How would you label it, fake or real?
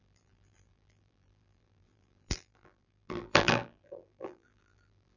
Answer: fake